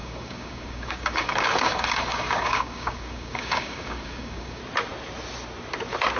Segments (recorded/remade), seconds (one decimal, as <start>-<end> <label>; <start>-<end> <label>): 0.0-4.6 remade; 4.6-6.2 recorded